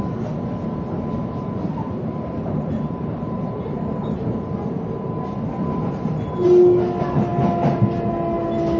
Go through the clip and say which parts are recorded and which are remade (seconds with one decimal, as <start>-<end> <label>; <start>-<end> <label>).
0.0-1.2 recorded; 1.2-6.2 remade; 6.2-8.8 recorded